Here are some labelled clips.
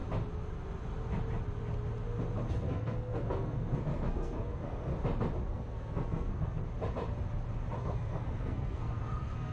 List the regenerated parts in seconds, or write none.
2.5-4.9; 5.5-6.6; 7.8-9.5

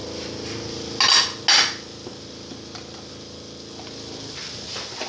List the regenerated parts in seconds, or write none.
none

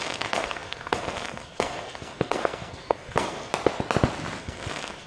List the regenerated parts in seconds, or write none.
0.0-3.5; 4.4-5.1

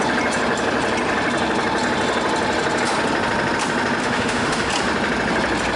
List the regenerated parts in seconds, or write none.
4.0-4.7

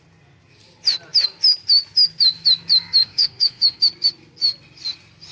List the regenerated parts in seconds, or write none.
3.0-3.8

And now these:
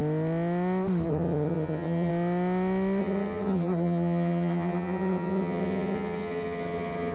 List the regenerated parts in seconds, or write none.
1.1-2.1; 3.0-7.1